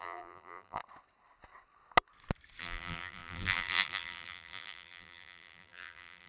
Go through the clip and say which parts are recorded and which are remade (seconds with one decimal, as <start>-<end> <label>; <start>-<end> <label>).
0.0-0.8 remade; 0.8-2.6 recorded; 2.6-6.3 remade